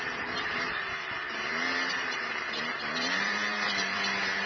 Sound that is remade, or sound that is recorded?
remade